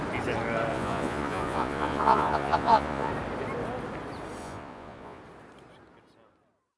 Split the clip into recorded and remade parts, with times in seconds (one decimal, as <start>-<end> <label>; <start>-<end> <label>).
0.0-0.7 recorded; 0.7-3.1 remade; 3.1-4.4 recorded; 4.4-5.2 remade; 5.2-6.8 recorded